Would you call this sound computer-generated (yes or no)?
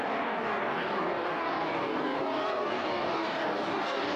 yes